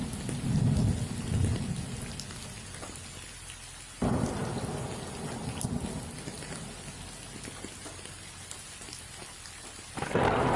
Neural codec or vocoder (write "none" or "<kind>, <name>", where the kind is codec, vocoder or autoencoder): none